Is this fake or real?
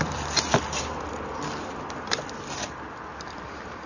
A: real